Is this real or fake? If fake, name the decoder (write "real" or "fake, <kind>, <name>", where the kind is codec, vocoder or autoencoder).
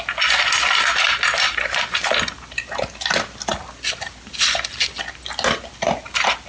real